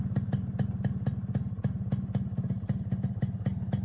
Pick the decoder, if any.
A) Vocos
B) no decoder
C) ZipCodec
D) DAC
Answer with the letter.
B